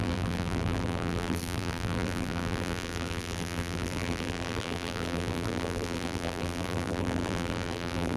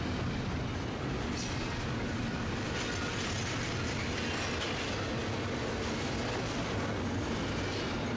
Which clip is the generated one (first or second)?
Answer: first